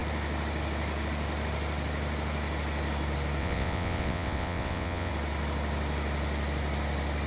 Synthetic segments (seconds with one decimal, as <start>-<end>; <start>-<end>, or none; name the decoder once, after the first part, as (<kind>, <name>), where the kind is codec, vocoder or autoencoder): 3.4-5.1 (vocoder, WaveNeXt)